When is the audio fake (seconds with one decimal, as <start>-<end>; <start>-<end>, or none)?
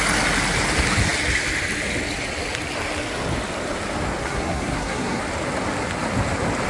4.2-5.2